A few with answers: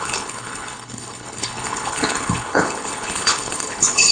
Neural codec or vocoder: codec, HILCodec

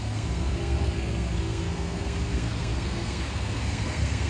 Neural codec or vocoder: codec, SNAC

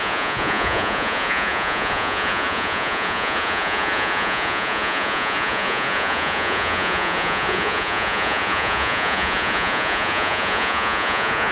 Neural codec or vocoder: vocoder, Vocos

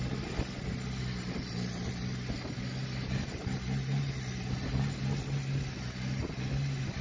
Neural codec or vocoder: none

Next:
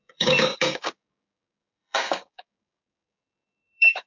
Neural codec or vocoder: codec, DAC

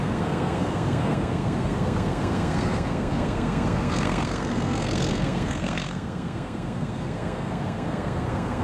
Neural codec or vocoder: codec, SNAC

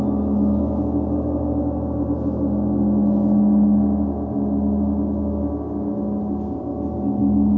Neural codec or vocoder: none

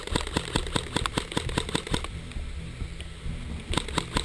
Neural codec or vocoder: none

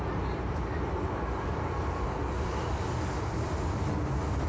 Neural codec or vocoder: none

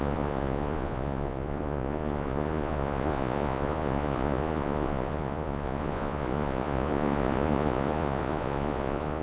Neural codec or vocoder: vocoder, Vocos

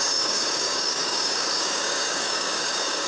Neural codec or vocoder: codec, DAC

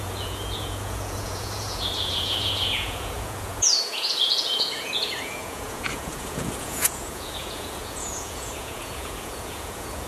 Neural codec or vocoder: vocoder, Vocos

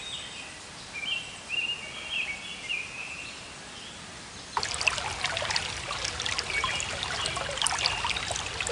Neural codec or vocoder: none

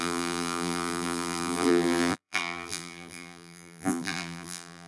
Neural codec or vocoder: vocoder, BigVGAN v2